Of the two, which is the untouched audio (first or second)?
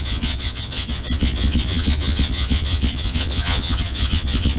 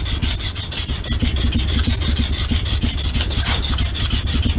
second